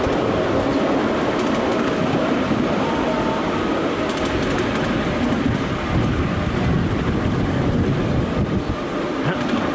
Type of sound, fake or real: real